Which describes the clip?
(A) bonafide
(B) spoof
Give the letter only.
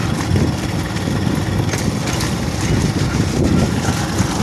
A